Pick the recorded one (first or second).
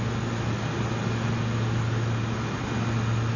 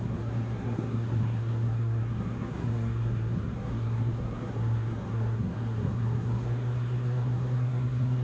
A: first